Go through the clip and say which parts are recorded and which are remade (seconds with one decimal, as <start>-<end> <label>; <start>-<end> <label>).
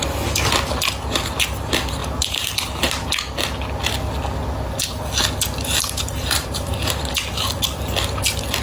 0.0-2.0 recorded; 2.0-2.5 remade; 2.5-6.2 recorded; 6.2-7.0 remade; 7.0-8.6 recorded